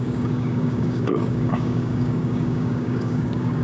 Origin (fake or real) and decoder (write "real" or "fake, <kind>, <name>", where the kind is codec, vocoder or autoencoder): fake, codec, DAC